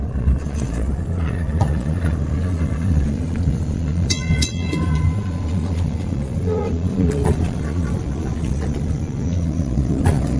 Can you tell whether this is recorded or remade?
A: remade